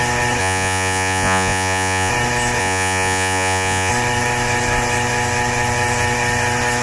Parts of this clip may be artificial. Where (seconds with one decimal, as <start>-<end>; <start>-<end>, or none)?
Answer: 0.4-2.1; 2.6-3.9